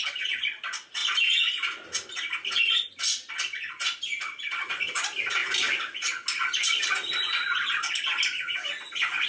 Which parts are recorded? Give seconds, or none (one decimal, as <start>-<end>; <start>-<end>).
0.0-9.3